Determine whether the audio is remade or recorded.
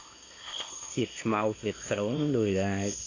remade